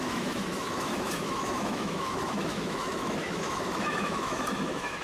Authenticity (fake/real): fake